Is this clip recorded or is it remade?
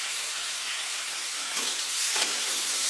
remade